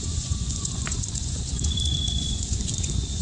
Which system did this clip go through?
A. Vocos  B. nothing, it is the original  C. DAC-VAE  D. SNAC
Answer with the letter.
A